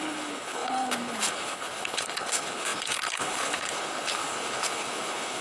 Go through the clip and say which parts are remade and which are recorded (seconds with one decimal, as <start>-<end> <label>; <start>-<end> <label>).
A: 0.0-5.4 remade